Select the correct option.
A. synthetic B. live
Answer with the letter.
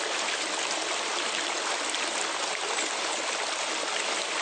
B